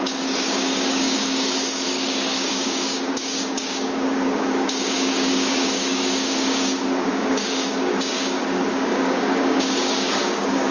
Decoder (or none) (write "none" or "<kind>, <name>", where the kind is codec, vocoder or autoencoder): codec, DAC